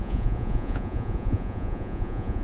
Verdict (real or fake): fake